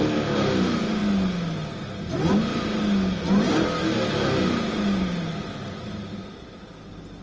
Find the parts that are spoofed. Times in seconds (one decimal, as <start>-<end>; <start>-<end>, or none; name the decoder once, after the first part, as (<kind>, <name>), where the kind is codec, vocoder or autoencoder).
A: none